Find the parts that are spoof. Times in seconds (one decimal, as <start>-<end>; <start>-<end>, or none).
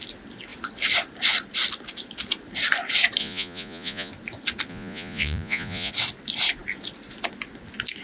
3.2-4.1; 4.7-5.9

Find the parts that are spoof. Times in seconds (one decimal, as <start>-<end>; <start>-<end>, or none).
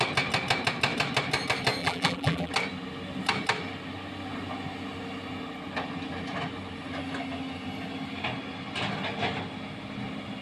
1.8-2.5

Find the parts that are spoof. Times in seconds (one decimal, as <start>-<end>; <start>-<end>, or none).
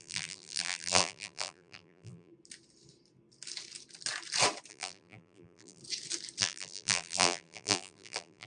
0.0-2.3; 4.7-5.8; 6.4-8.5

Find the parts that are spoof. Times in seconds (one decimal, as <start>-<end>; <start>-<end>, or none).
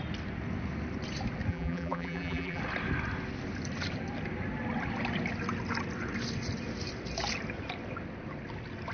1.5-2.6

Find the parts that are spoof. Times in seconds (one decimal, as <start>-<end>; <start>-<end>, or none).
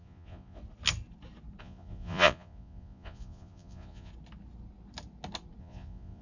0.0-0.6; 1.6-4.1; 5.6-6.2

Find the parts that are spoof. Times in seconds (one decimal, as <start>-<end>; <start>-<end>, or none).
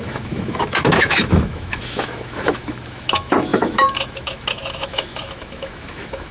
0.0-6.3